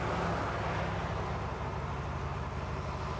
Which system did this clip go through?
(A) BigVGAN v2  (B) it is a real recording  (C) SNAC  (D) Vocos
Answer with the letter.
B